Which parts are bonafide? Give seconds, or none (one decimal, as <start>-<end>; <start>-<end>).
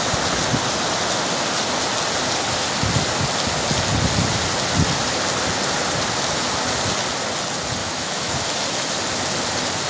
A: 0.0-7.8; 8.3-9.9